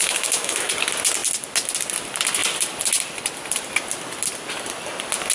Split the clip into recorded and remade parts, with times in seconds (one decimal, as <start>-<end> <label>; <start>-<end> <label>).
0.0-0.7 remade; 0.7-5.3 recorded